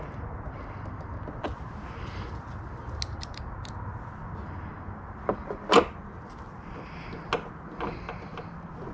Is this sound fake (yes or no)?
no